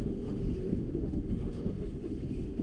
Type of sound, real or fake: fake